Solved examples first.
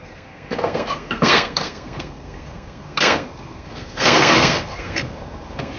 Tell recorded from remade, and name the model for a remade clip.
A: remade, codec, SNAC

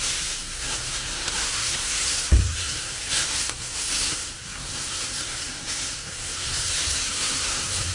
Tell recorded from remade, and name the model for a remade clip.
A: remade, codec, SNAC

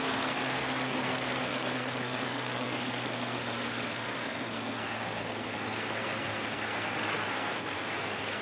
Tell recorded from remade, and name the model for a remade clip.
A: remade, codec, SNAC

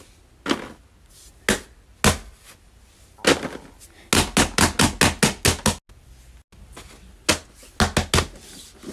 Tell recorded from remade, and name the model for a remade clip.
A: recorded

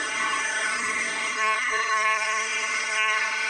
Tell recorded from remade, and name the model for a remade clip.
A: remade, codec, SNAC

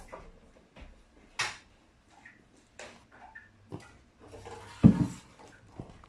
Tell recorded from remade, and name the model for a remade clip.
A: recorded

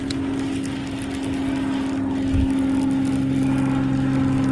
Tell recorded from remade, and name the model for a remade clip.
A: recorded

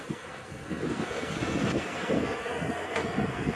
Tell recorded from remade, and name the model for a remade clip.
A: remade, codec, SNAC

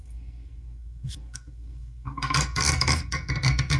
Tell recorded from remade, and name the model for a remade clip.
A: remade, codec, SNAC